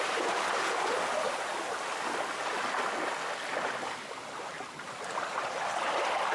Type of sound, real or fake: real